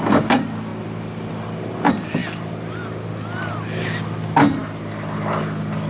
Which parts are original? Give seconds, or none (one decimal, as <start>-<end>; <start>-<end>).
0.0-5.9